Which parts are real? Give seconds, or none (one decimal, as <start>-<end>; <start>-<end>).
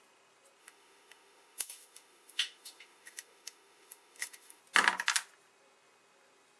0.0-0.6; 4.6-6.6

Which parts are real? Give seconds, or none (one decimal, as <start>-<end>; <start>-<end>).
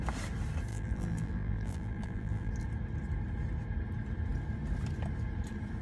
0.0-0.7; 2.5-5.8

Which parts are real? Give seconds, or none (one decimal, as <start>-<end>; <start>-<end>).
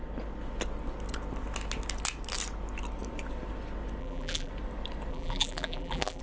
0.0-4.0; 4.5-5.1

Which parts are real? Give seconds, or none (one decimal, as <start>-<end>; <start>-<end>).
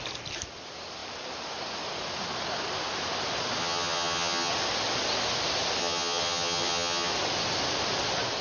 0.0-3.6; 4.5-5.8; 7.1-8.4